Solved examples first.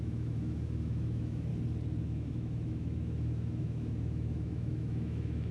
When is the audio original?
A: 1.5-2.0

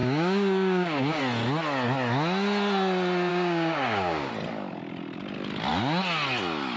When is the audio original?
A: 1.2-3.3; 4.3-6.8

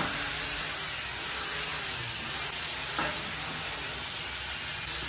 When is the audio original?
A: 0.0-5.1

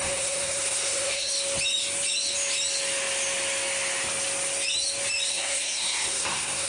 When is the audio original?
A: 1.3-5.3

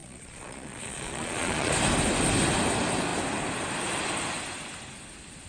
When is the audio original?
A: 1.7-5.5

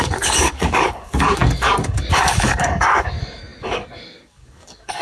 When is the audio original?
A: none